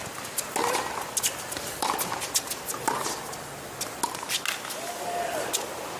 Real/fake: real